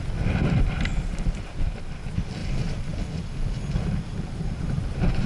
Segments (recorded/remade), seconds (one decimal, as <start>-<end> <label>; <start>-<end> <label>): 0.0-2.4 recorded; 2.4-4.8 remade; 4.8-5.3 recorded